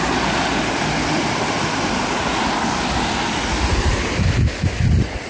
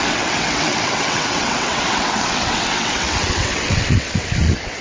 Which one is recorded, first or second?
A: first